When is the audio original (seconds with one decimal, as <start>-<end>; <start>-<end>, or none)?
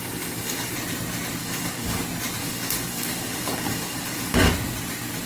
0.7-1.4; 2.0-2.4; 4.5-5.3